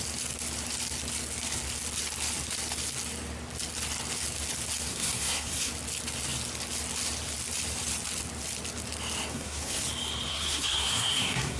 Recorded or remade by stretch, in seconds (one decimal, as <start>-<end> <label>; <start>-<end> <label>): 0.0-4.9 recorded; 4.9-5.7 remade; 5.7-9.3 recorded; 9.3-9.8 remade; 9.8-10.3 recorded; 10.3-11.6 remade